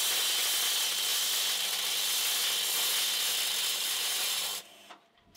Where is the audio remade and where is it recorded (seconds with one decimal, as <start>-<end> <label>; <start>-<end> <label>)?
0.0-3.7 recorded; 3.7-5.4 remade